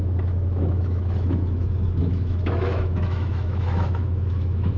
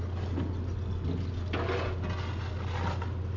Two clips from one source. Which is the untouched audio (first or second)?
second